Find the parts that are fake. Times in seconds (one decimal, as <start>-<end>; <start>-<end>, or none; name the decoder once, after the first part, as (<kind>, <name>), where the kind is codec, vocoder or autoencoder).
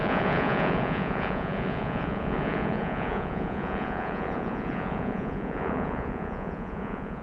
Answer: 0.0-7.2 (vocoder, Vocos)